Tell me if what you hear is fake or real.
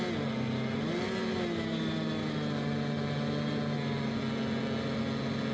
real